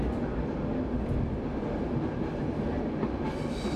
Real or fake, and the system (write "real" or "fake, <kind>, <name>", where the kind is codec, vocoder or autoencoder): real